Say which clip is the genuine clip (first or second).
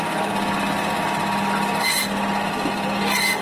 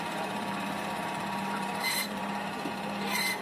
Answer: first